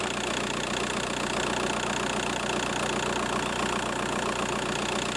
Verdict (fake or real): real